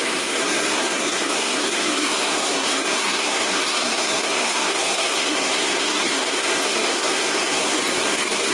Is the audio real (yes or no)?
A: no